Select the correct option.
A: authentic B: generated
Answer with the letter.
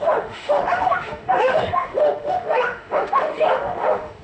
B